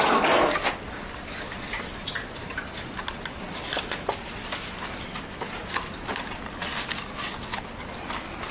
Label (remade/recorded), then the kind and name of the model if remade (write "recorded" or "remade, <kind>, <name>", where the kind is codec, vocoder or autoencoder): recorded